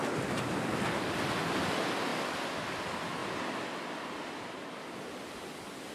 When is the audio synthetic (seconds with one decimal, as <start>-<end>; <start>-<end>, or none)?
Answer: 2.1-2.6